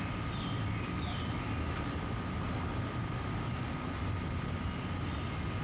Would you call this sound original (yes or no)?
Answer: yes